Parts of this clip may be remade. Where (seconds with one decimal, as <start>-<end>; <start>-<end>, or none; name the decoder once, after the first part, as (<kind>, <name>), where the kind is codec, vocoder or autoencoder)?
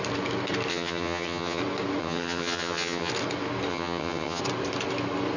0.7-1.6 (vocoder, HiFi-GAN); 2.0-3.1; 3.7-4.4